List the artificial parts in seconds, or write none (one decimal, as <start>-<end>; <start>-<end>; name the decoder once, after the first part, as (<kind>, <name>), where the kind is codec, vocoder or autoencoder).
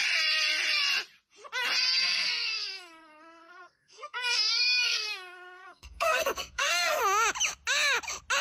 2.0-7.0 (codec, SNAC)